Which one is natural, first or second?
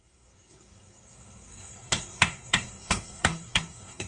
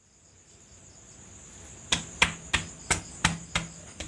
second